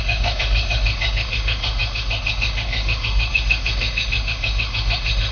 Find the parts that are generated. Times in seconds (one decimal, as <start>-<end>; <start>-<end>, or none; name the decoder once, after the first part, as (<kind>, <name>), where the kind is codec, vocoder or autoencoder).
0.0-5.3 (autoencoder, DAC-VAE)